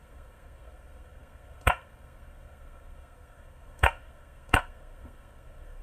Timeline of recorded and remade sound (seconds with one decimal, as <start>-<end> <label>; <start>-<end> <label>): 0.0-5.8 remade